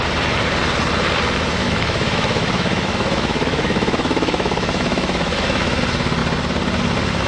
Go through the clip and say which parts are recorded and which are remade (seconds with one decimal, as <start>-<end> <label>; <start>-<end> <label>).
0.0-1.6 recorded; 1.6-5.8 remade; 5.8-7.3 recorded